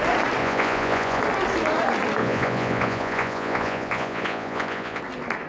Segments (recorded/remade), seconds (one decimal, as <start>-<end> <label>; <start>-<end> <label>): 0.0-0.4 recorded; 0.4-1.2 remade; 1.2-2.2 recorded; 2.2-5.0 remade; 5.0-5.5 recorded